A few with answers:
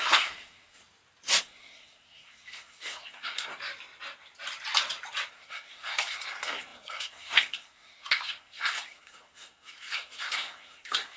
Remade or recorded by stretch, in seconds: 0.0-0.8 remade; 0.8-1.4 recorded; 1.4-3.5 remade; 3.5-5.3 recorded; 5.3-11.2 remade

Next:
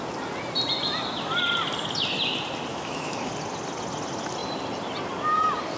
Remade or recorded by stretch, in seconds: 0.0-2.7 recorded; 2.7-3.3 remade; 3.3-5.8 recorded

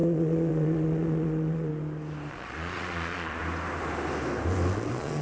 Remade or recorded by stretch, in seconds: 0.0-1.7 remade; 1.7-2.3 recorded; 2.3-3.4 remade; 3.4-4.7 recorded; 4.7-5.2 remade

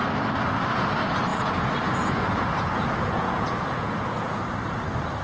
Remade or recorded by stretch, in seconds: 0.0-1.3 recorded; 1.3-4.4 remade; 4.4-5.2 recorded

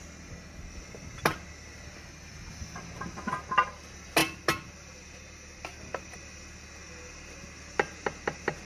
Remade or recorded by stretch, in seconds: 0.0-8.6 recorded

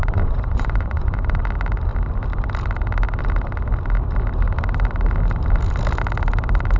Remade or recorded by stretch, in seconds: 0.0-1.4 remade; 1.4-6.8 recorded

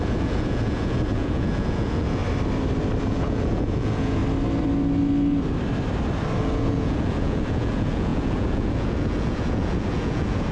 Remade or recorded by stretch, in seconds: 0.0-2.2 remade; 2.2-3.0 recorded; 3.0-4.2 remade; 4.2-6.4 recorded; 6.4-10.5 remade